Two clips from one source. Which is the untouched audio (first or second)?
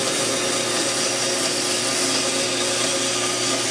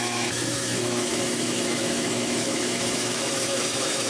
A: first